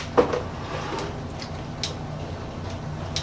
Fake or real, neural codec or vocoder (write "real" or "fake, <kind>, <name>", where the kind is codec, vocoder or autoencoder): real